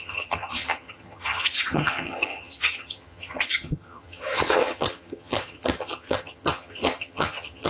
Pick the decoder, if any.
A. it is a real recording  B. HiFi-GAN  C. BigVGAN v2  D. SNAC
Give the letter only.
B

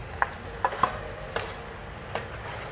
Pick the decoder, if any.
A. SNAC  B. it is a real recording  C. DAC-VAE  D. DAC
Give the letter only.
B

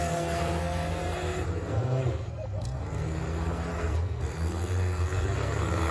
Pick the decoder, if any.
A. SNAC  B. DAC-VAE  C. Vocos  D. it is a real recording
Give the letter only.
A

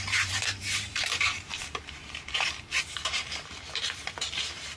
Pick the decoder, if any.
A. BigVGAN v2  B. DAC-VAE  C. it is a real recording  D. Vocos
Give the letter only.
A